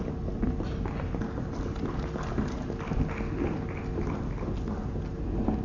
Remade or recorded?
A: recorded